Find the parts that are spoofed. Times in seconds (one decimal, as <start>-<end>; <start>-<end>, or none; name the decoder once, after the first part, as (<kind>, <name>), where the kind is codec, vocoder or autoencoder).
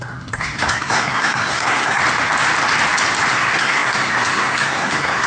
0.0-2.0 (codec, SNAC); 3.3-5.3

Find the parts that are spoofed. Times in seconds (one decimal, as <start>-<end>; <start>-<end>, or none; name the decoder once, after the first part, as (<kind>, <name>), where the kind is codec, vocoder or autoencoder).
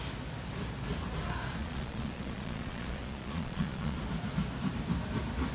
1.6-4.0 (vocoder, Vocos)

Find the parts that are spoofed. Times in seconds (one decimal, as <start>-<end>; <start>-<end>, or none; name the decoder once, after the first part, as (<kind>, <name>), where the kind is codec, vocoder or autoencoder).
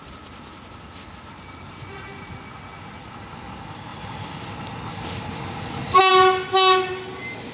none